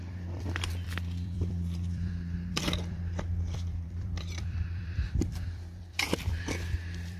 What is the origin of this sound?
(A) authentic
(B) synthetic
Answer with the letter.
B